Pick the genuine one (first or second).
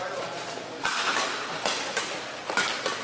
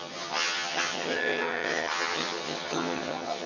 first